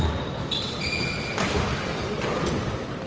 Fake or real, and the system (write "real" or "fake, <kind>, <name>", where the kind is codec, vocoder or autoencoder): real